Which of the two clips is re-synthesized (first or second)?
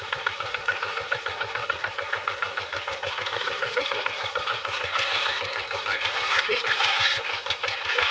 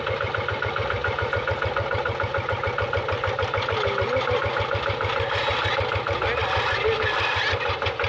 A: first